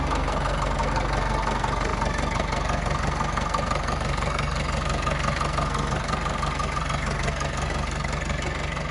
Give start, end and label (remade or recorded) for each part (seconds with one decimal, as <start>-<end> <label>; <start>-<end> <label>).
0.0-8.9 remade